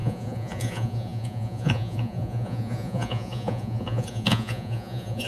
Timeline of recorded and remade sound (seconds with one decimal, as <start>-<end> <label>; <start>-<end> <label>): 0.0-5.3 remade